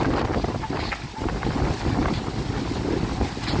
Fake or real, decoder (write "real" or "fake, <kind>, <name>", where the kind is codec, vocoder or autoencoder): real